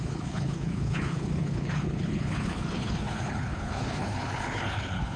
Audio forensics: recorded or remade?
remade